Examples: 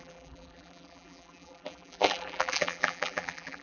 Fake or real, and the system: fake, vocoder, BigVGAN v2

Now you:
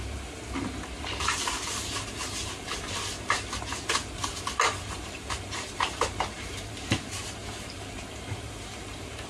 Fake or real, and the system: fake, vocoder, BigVGAN v2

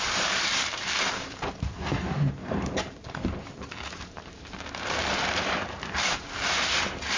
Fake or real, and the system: fake, vocoder, BigVGAN v2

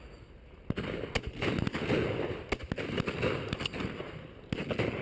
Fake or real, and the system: real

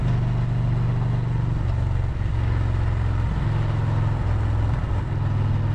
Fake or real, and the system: real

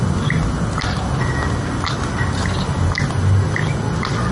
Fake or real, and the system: real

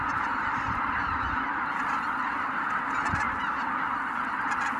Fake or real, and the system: real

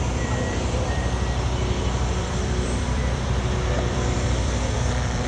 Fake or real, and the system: fake, vocoder, BigVGAN v2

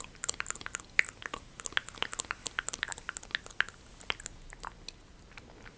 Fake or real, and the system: real